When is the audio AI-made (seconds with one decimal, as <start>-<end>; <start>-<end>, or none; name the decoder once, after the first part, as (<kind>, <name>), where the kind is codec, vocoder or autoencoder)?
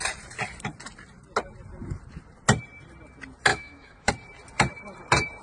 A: 3.5-4.1 (autoencoder, DAC-VAE)